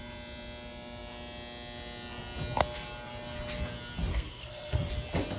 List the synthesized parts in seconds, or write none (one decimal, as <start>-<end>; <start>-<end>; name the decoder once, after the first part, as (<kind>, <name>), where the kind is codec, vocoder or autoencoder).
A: 4.1-4.9 (codec, SNAC)